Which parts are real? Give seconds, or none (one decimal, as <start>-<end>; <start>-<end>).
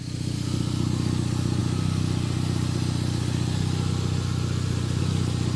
0.0-5.6